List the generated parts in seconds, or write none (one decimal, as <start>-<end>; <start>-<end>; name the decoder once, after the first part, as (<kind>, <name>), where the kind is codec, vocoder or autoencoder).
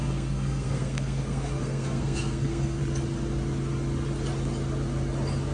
0.0-2.8 (codec, SNAC)